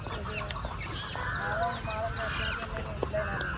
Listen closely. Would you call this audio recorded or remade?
recorded